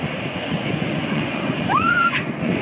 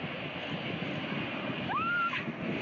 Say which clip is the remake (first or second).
first